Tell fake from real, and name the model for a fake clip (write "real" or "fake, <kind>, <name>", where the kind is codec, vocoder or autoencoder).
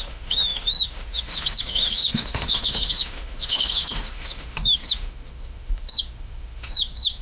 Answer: fake, autoencoder, DAC-VAE